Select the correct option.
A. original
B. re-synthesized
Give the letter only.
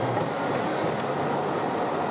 A